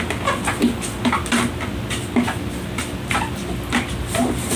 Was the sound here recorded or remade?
recorded